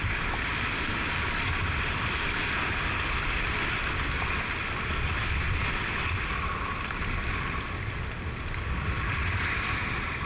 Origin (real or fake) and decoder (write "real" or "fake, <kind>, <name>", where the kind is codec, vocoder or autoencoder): real